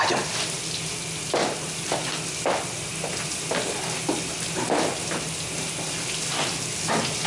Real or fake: real